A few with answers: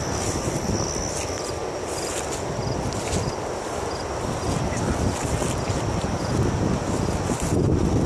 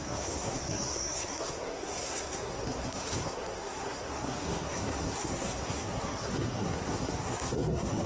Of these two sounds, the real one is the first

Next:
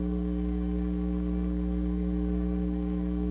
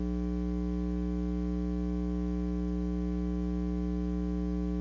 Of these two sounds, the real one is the second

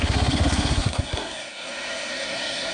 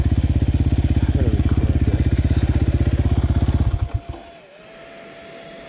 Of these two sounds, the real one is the second